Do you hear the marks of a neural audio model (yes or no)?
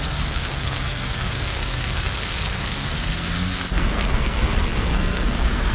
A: yes